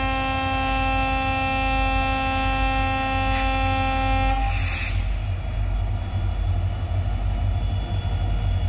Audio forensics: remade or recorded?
recorded